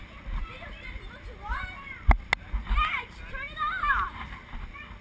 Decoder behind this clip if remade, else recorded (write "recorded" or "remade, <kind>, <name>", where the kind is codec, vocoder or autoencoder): recorded